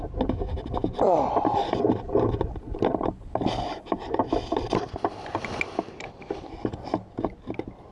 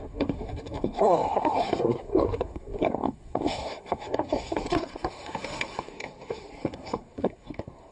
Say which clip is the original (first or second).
first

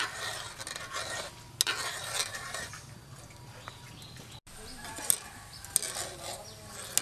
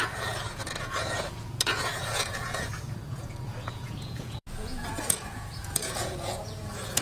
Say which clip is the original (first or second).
first